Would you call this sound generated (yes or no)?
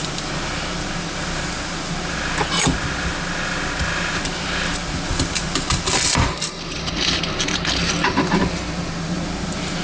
no